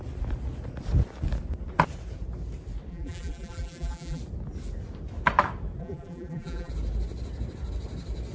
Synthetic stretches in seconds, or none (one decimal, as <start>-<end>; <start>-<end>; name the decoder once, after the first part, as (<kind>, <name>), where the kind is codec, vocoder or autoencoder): 2.9-4.2 (vocoder, BigVGAN v2); 5.8-6.7